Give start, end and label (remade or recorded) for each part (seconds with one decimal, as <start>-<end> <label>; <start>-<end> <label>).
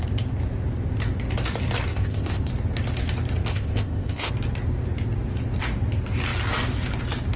0.0-1.9 recorded; 1.9-2.5 remade; 2.5-3.5 recorded; 3.5-4.3 remade; 4.3-7.4 recorded